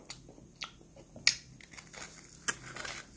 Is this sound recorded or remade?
recorded